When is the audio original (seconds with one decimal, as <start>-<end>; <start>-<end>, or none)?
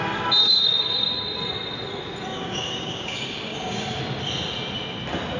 0.0-0.4; 0.9-2.3; 4.0-5.4